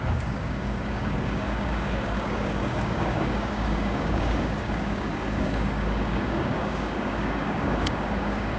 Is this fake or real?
fake